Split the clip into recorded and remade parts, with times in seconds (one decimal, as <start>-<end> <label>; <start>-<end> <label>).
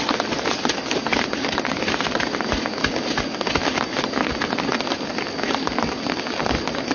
0.0-6.9 recorded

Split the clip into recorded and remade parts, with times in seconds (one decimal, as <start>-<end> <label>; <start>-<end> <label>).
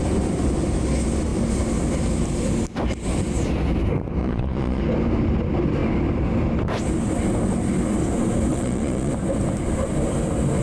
0.0-4.2 recorded; 4.2-4.8 remade; 4.8-8.5 recorded; 8.5-9.1 remade; 9.1-10.6 recorded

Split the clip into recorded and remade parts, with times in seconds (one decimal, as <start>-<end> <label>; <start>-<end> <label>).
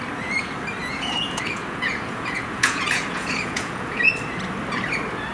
0.0-0.8 recorded; 0.8-4.0 remade; 4.0-5.3 recorded